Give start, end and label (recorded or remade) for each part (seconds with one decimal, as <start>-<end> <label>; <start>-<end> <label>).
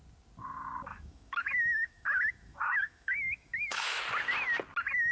0.0-0.9 recorded; 0.9-4.0 remade; 4.0-5.1 recorded